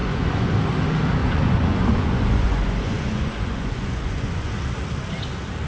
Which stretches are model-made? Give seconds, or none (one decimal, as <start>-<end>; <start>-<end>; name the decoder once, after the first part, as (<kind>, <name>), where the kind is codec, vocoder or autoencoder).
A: 0.0-0.6 (vocoder, Vocos); 1.2-4.6